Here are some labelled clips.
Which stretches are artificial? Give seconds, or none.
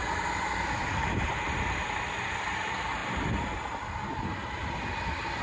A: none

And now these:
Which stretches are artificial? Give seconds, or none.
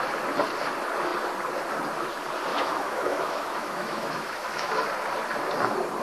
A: 2.5-4.7 (autoencoder, DAC-VAE)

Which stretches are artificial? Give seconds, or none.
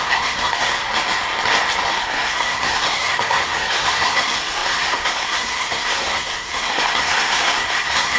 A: 0.0-0.8 (codec, SNAC); 2.0-8.2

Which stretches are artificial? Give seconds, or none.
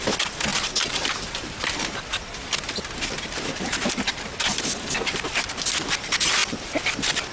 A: 0.5-1.7 (vocoder, BigVGAN v2); 6.4-7.3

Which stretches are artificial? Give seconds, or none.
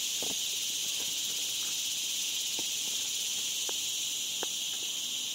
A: none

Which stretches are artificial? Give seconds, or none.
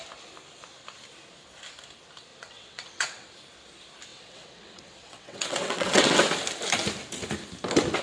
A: 2.3-3.3 (vocoder, WaveNeXt); 4.1-6.2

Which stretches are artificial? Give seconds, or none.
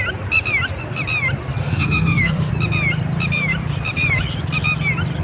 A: 1.6-2.5 (autoencoder, DAC-VAE)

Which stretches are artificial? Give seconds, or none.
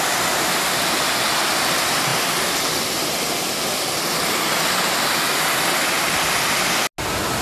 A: none